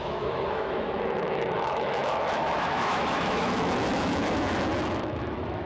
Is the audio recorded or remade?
remade